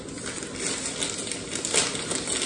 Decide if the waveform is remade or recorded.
recorded